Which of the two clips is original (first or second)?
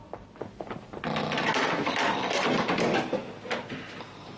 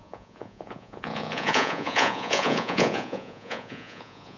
first